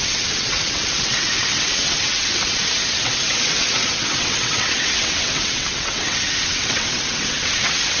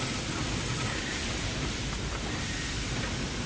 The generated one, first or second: first